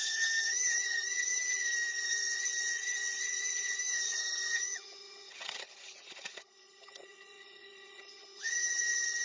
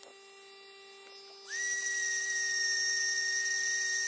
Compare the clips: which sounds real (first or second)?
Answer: second